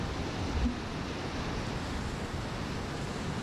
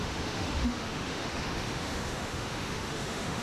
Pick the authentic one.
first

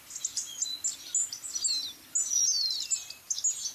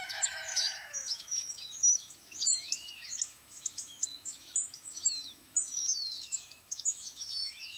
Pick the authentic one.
first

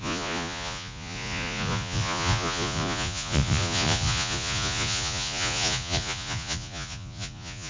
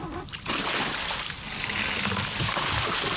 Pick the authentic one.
second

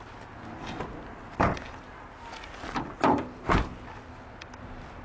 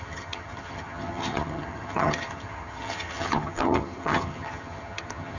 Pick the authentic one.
first